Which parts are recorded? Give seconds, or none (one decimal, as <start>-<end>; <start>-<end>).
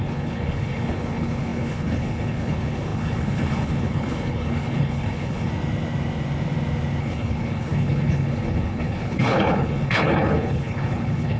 5.5-7.0